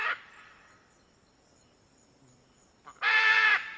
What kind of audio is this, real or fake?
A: real